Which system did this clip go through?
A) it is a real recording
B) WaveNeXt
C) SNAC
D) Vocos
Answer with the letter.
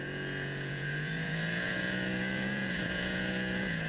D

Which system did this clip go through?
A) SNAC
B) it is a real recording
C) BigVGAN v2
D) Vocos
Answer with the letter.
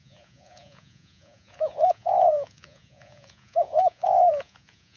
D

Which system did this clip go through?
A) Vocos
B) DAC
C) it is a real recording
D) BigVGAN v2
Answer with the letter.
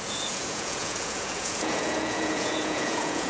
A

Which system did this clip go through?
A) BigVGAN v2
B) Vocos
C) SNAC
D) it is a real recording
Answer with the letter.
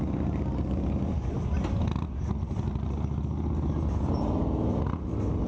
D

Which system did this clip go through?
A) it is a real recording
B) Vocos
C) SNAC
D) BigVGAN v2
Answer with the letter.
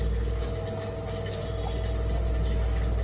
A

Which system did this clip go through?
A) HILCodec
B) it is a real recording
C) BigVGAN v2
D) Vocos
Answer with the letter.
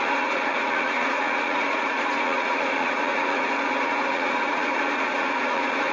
D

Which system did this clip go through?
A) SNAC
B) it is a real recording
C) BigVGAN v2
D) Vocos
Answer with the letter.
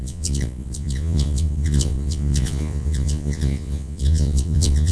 D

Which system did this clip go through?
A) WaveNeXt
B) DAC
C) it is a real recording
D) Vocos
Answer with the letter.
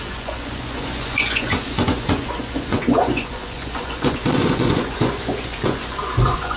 D